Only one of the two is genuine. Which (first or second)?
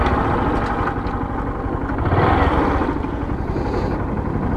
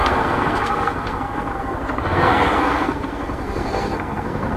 first